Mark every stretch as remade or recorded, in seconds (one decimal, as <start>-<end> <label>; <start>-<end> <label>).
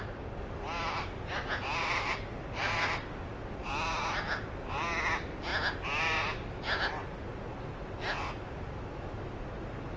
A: 0.0-10.0 recorded